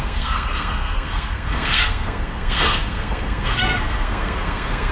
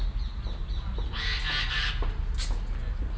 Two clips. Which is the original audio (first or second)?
second